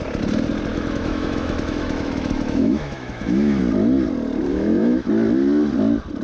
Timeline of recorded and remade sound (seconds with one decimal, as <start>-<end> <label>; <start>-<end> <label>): 0.0-0.7 recorded; 0.7-3.6 remade; 3.6-4.5 recorded; 4.5-5.1 remade; 5.1-6.2 recorded